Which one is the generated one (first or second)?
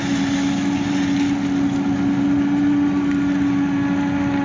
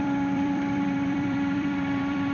second